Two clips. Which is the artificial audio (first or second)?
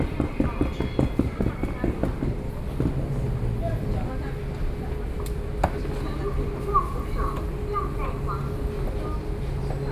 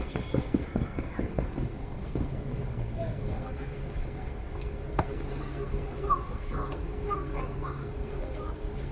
second